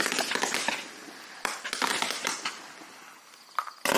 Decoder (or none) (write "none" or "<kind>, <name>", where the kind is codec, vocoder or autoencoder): none